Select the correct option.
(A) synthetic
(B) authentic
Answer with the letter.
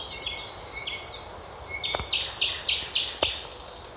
B